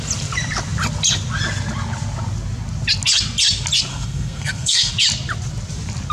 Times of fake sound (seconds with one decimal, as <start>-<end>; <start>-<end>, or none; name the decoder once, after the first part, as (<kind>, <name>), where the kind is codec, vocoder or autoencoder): 3.9-4.9 (codec, SNAC)